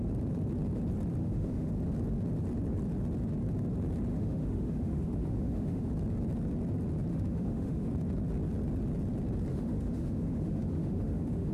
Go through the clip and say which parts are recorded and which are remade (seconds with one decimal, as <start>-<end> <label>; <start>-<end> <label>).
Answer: 0.0-1.2 recorded; 1.2-1.7 remade; 1.7-4.1 recorded; 4.1-5.9 remade; 5.9-7.1 recorded; 7.1-7.9 remade; 7.9-9.5 recorded; 9.5-11.5 remade

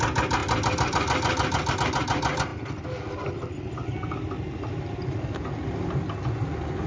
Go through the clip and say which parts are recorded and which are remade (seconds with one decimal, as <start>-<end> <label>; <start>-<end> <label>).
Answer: 0.0-6.9 recorded

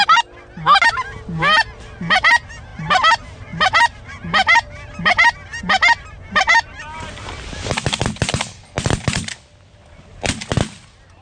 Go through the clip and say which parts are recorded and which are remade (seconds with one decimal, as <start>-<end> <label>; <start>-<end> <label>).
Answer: 0.0-11.2 recorded

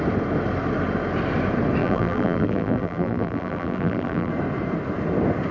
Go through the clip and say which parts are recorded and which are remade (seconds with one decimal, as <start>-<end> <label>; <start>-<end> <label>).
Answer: 0.0-1.8 recorded; 1.8-4.3 remade; 4.3-5.5 recorded

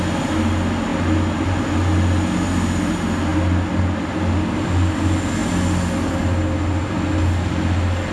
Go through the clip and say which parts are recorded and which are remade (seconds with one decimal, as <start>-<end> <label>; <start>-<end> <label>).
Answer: 0.0-8.1 recorded

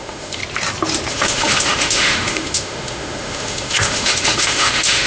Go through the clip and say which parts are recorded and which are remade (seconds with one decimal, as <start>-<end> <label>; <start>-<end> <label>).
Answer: 0.0-0.4 remade; 0.4-1.1 recorded; 1.1-5.1 remade

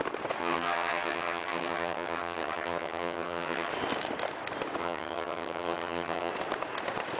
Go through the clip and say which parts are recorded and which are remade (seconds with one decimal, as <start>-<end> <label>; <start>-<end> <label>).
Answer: 0.0-0.4 recorded; 0.4-3.7 remade; 3.7-4.8 recorded; 4.8-6.3 remade; 6.3-7.2 recorded